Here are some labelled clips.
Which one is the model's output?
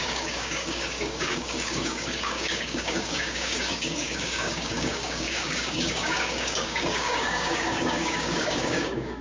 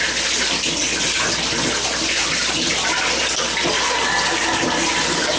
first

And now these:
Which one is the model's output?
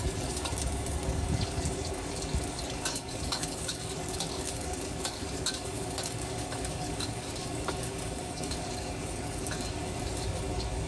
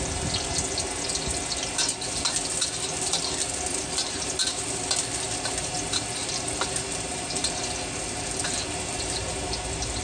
first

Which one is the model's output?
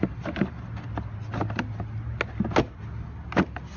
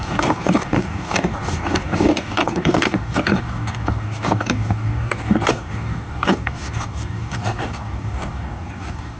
second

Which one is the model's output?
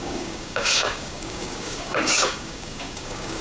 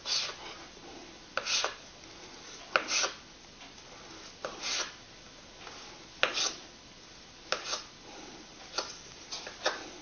first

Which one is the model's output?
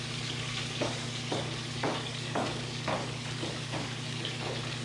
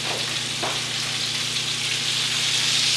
first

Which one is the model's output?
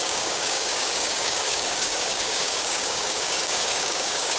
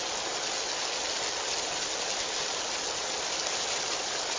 first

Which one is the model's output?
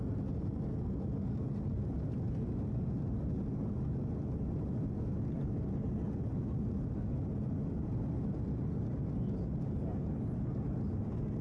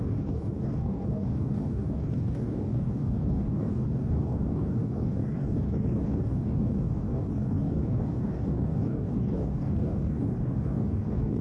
second